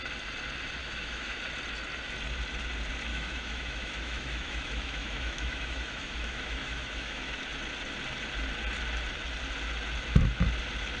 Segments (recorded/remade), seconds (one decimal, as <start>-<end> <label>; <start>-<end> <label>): 0.0-0.8 recorded; 0.8-1.4 remade; 1.4-3.1 recorded; 3.1-7.4 remade; 7.4-11.0 recorded